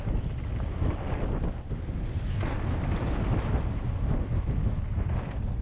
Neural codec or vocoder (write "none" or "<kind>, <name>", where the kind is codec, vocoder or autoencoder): none